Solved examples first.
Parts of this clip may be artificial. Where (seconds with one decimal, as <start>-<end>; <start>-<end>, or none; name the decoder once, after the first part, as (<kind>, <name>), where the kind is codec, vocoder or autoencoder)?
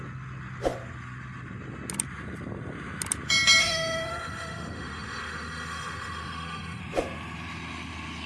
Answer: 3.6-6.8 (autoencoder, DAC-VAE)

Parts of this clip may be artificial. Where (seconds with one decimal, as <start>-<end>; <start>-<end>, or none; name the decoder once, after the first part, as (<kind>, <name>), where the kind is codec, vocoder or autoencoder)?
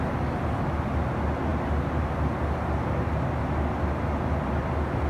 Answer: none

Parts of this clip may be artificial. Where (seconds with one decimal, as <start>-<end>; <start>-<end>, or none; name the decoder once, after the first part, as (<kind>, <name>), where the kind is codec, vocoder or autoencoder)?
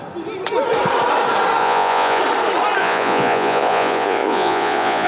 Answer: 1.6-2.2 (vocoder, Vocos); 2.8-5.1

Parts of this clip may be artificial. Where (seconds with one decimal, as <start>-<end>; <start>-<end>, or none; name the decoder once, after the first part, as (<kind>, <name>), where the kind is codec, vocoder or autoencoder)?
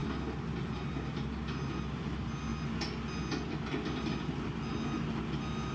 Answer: none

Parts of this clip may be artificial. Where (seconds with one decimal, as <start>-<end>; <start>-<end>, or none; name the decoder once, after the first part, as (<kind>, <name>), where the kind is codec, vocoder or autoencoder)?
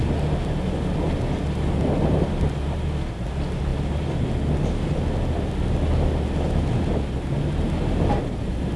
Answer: none